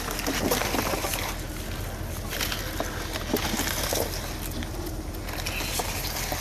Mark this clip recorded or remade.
recorded